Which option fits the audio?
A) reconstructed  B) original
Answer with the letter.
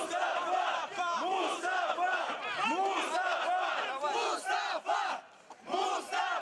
A